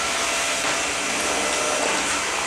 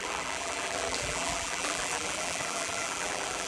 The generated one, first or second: second